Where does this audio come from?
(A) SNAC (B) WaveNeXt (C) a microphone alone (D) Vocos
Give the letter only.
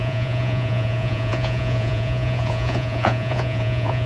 D